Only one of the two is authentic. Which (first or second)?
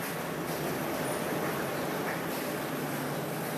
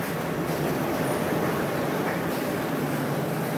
first